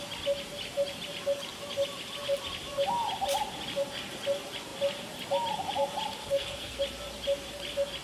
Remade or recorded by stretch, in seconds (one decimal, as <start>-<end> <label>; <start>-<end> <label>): 0.0-6.2 recorded; 6.2-6.8 remade; 6.8-8.0 recorded